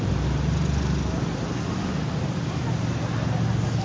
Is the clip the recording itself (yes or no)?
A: yes